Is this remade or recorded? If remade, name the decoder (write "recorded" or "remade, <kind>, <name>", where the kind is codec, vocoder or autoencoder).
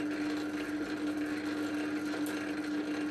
recorded